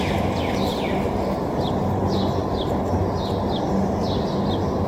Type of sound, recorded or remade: recorded